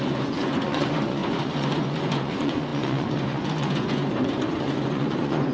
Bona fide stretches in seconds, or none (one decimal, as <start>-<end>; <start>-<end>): none